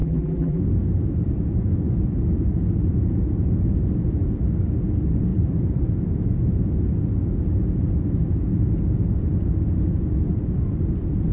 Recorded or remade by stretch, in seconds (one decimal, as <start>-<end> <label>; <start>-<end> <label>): 0.0-0.6 remade; 0.6-11.3 recorded